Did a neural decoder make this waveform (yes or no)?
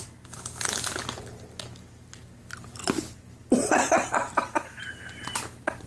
no